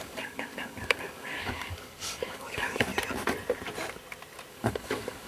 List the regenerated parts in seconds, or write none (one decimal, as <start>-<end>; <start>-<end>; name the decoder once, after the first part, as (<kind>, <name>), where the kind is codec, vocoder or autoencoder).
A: 0.0-2.9 (codec, DAC); 4.5-5.3